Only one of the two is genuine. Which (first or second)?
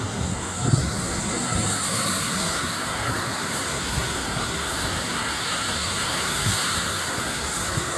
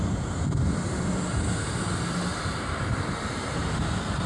second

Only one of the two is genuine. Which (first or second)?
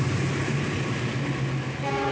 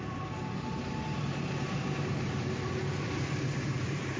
first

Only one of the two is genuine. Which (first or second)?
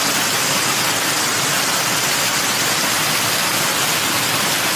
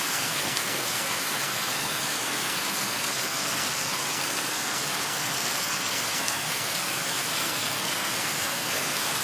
first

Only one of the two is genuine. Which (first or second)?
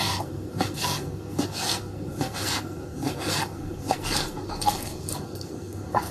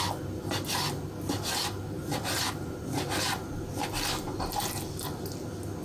second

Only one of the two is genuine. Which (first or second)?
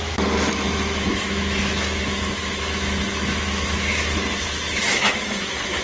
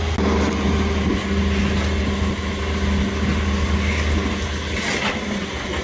second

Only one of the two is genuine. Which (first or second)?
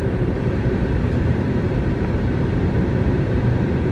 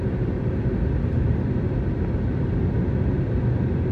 second